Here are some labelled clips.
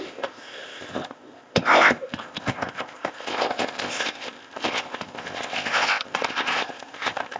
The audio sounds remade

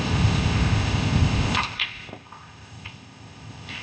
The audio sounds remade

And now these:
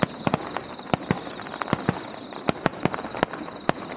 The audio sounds recorded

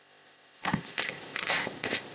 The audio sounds remade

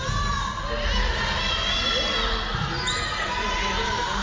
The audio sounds recorded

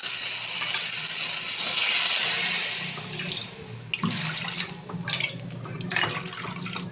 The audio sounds recorded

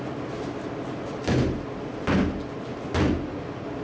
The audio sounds recorded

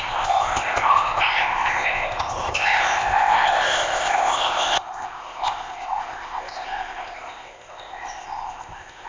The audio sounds remade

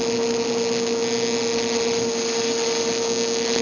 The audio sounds recorded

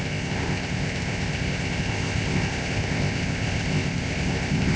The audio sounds remade